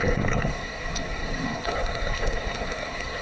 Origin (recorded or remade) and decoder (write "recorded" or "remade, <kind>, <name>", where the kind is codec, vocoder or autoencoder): remade, codec, SNAC